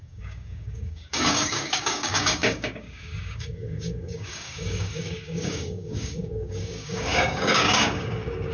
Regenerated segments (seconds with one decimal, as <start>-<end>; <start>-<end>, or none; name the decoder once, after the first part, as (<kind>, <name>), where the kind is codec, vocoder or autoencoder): 0.0-8.5 (codec, DAC)